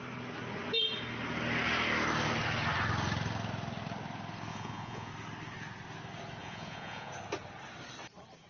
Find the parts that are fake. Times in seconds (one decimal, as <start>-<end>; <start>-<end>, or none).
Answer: 4.5-5.1; 6.4-7.1